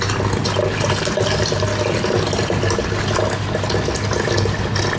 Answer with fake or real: real